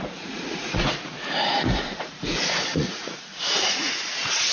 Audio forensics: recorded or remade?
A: remade